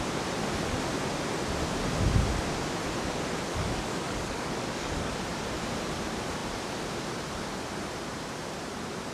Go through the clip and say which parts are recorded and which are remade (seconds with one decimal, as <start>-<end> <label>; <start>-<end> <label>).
0.0-3.5 recorded; 3.5-5.1 remade; 5.1-9.1 recorded